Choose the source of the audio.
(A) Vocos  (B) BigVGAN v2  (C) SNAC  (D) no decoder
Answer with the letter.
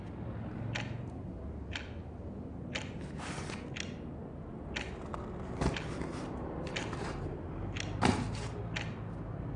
D